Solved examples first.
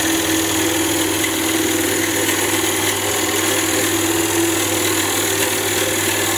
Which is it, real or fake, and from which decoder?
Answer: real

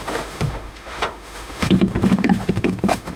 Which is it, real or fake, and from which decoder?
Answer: fake, autoencoder, DAC-VAE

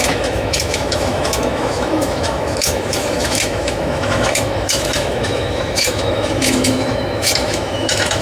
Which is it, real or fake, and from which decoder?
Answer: fake, autoencoder, DAC-VAE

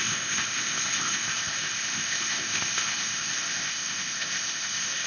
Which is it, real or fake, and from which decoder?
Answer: fake, codec, ZipCodec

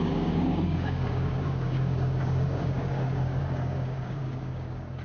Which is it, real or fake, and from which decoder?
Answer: fake, codec, DAC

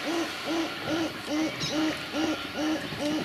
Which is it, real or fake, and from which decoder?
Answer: real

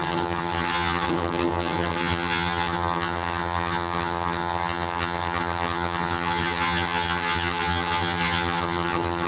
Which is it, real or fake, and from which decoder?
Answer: fake, vocoder, HiFi-GAN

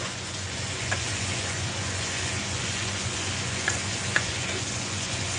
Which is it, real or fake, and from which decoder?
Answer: fake, vocoder, Vocos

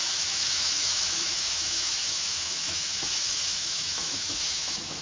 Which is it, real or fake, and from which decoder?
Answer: fake, autoencoder, DAC-VAE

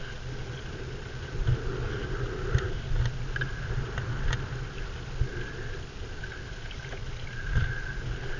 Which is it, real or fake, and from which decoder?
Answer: real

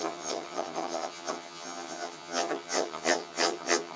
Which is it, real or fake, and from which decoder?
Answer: fake, vocoder, HiFi-GAN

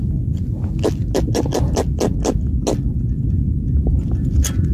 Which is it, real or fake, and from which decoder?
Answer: real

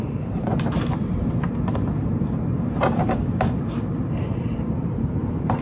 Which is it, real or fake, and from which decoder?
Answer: fake, vocoder, BigVGAN v2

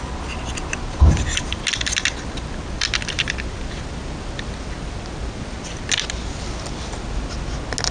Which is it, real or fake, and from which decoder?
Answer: real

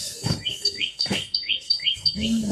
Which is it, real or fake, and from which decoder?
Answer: fake, codec, SNAC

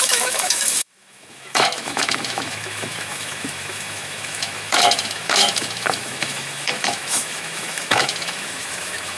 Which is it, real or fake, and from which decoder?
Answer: fake, autoencoder, DAC-VAE